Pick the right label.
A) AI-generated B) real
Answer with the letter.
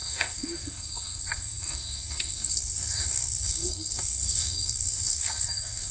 A